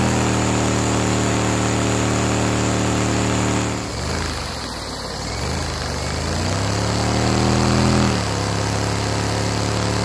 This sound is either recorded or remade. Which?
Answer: recorded